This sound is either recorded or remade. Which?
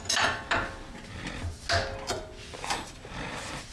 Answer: recorded